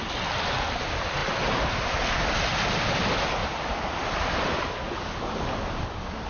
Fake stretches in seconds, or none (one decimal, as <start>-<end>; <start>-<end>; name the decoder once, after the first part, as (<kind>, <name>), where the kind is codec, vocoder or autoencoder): none